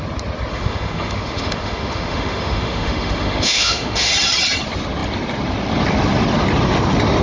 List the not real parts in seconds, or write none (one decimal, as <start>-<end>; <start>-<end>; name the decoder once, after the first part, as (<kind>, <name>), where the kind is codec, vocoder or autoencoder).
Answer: 0.5-4.1 (autoencoder, DAC-VAE)

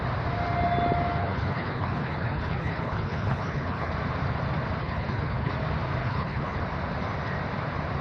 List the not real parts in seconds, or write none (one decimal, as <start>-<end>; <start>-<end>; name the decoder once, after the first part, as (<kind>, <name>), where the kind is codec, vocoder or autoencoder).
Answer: 1.2-3.9 (codec, HILCodec); 4.8-5.5; 6.0-6.6

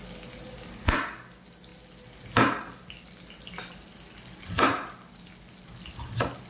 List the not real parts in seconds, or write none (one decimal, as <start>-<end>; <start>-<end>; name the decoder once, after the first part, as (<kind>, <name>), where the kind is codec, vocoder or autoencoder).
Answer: none

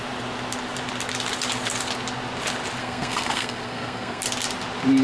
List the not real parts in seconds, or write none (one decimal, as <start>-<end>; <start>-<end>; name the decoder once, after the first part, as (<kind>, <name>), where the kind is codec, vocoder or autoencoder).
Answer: 2.8-4.2 (codec, SNAC)

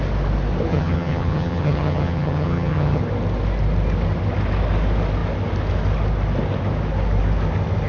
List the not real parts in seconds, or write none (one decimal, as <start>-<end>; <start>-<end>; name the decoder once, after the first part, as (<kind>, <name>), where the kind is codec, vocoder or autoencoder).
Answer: 0.7-3.0 (vocoder, HiFi-GAN)

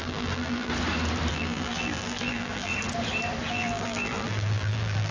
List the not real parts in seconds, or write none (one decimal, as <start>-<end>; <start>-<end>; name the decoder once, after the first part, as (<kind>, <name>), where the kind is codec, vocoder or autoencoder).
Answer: 0.0-0.7 (vocoder, BigVGAN v2); 1.3-2.7; 3.5-5.1